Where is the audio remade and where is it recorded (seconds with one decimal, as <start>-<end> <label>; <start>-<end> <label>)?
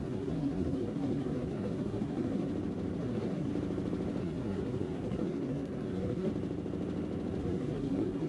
0.0-2.5 remade; 2.5-3.0 recorded; 3.0-3.5 remade; 3.5-4.2 recorded; 4.2-6.3 remade; 6.3-7.4 recorded; 7.4-8.3 remade